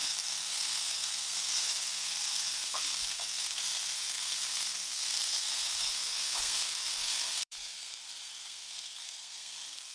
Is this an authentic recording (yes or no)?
no